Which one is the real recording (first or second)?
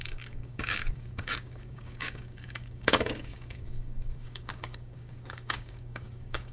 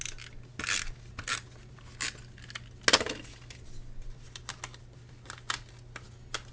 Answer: second